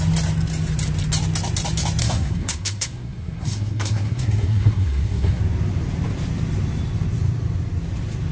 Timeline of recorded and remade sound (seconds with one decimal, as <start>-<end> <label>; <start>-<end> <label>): 0.0-2.0 recorded; 2.0-5.4 remade; 5.4-8.3 recorded